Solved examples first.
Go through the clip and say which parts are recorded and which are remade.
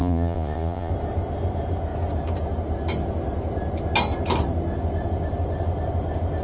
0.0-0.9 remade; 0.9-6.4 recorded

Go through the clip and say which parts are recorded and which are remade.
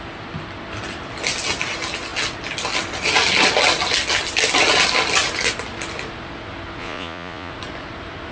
0.0-6.8 recorded; 6.8-7.5 remade; 7.5-8.3 recorded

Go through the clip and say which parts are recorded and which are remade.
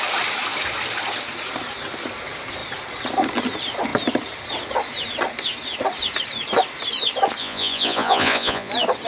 0.0-7.4 recorded; 7.4-8.7 remade; 8.7-9.1 recorded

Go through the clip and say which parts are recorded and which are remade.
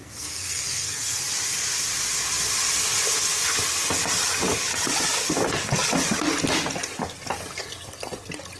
0.0-1.2 remade; 1.2-8.6 recorded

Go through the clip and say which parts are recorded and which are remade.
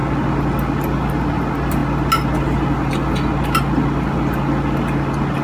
0.0-5.4 recorded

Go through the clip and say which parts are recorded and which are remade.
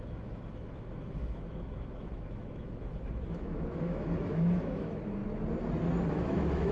0.0-5.2 remade; 5.2-6.1 recorded; 6.1-6.7 remade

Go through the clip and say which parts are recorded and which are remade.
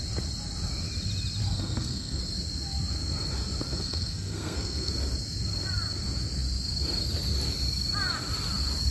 0.0-1.4 recorded; 1.4-2.2 remade; 2.2-3.7 recorded; 3.7-4.9 remade; 4.9-8.9 recorded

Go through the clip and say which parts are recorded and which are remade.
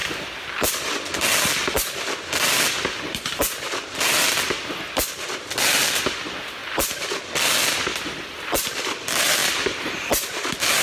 0.0-0.9 remade; 0.9-6.6 recorded; 6.6-7.2 remade; 7.2-9.4 recorded; 9.4-9.9 remade; 9.9-10.8 recorded